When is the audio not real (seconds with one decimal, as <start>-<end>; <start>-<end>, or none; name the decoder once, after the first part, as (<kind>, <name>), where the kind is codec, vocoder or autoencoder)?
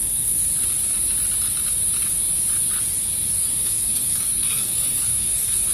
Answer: 0.0-0.5 (codec, SNAC); 3.3-5.7